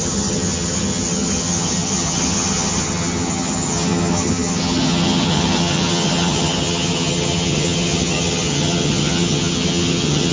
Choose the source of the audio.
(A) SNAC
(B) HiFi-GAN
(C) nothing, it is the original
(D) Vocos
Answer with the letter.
B